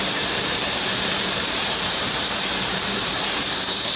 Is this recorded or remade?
remade